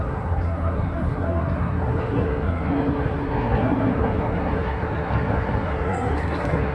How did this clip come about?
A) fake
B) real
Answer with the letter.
A